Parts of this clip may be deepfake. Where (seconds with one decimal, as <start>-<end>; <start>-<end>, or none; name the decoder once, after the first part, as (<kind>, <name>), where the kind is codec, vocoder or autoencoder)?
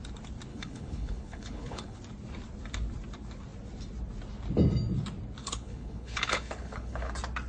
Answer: 0.5-2.0 (codec, HILCodec); 5.4-7.1